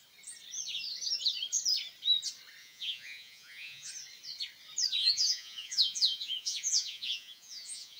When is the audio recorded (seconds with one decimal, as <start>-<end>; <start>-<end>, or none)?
0.0-2.6; 3.9-5.0